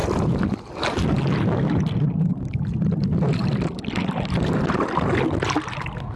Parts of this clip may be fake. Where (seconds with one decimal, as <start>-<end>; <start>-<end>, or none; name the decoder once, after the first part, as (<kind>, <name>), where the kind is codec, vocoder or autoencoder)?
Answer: none